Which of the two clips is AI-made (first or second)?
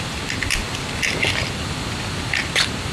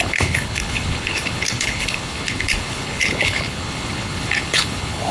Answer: second